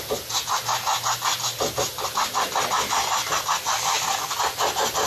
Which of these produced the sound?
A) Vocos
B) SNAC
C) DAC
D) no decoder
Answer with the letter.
D